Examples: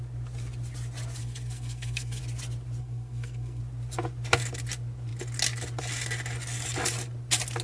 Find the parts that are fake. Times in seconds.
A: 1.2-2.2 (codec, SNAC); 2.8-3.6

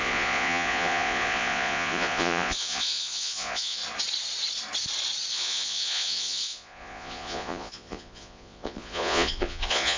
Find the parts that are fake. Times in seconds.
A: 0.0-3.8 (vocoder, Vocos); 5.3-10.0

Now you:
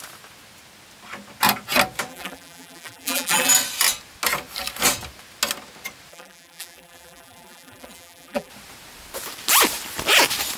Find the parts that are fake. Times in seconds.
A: 2.1-3.5 (vocoder, BigVGAN v2); 6.1-8.5

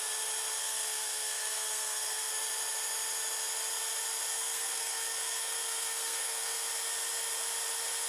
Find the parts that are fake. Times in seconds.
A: 0.6-2.3 (codec, SNAC); 4.3-6.7

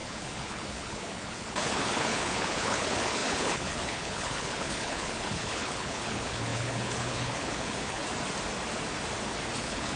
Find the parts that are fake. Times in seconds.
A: 0.0-8.0 (codec, HILCodec); 9.6-10.0

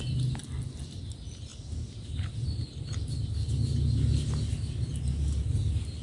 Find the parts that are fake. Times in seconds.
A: 1.5-2.6 (vocoder, BigVGAN v2)